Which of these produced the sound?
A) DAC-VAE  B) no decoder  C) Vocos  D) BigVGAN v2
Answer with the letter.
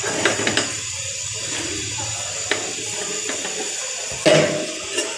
B